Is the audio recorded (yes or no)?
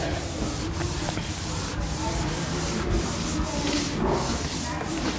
yes